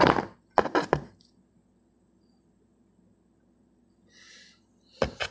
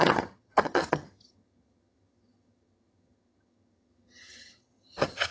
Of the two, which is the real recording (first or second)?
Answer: first